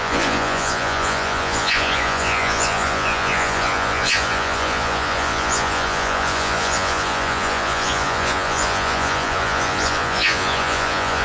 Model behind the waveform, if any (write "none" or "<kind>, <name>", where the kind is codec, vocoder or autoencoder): vocoder, Vocos